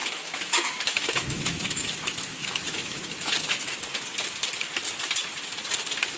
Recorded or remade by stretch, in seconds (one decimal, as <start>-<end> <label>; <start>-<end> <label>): 0.0-3.7 remade; 3.7-6.2 recorded